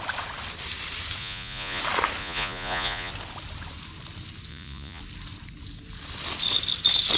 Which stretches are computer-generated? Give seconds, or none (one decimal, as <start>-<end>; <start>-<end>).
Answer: 1.2-1.8; 2.2-3.1; 4.5-5.0